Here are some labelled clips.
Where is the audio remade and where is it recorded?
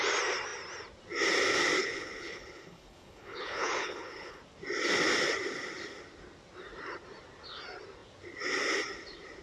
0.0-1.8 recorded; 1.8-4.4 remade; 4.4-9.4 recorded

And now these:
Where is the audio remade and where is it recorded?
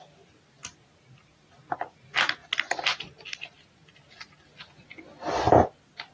0.0-6.1 recorded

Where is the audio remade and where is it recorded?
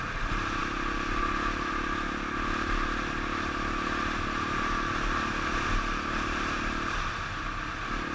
0.0-8.1 recorded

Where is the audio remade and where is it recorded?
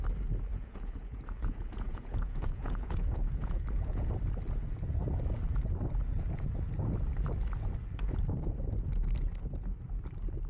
0.0-0.5 recorded; 0.5-4.1 remade; 4.1-10.5 recorded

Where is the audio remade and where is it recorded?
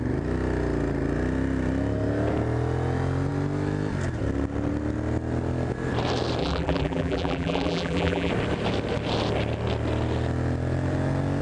0.0-6.4 recorded; 6.4-8.3 remade; 8.3-11.4 recorded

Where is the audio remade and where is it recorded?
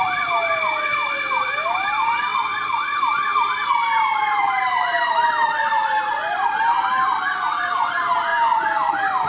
0.0-9.3 recorded